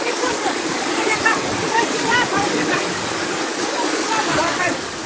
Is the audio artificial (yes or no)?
yes